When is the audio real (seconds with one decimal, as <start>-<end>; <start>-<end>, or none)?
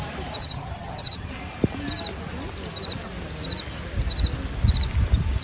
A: 0.0-0.4; 1.3-5.4